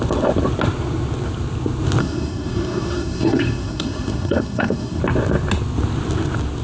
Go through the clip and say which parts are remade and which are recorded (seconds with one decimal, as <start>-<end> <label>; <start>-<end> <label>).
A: 0.0-2.0 recorded; 2.0-5.0 remade; 5.0-6.6 recorded